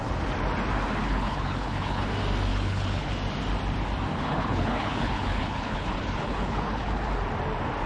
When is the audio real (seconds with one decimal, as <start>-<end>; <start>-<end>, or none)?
0.0-1.0; 2.1-2.5; 3.1-4.1; 7.1-7.9